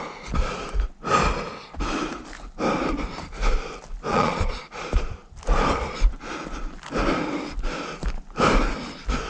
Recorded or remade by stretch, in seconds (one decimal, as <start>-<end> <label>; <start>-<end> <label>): 0.0-4.1 recorded; 4.1-4.6 remade; 4.6-9.3 recorded